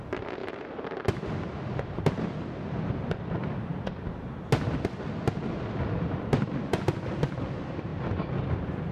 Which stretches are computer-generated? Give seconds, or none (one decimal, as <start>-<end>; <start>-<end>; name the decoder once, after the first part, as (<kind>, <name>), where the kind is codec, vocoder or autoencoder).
0.0-0.4 (vocoder, BigVGAN v2); 2.1-3.7; 6.2-7.9; 8.5-8.9

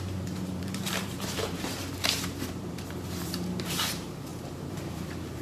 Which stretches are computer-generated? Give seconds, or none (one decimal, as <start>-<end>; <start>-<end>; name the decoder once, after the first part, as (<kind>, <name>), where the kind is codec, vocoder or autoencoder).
0.0-5.4 (vocoder, BigVGAN v2)

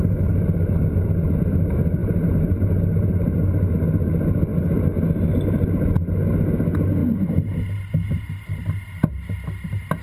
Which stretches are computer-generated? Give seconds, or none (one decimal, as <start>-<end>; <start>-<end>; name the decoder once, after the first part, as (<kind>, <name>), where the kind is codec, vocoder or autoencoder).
none

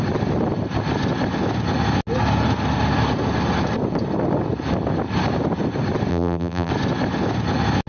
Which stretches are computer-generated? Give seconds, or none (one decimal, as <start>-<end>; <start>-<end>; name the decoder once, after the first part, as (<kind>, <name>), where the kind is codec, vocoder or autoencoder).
6.1-6.7 (vocoder, BigVGAN v2)

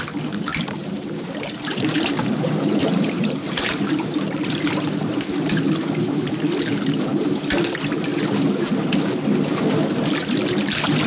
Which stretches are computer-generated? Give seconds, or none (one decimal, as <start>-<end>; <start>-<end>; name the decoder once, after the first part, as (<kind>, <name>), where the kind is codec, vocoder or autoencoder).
0.5-4.7 (vocoder, BigVGAN v2)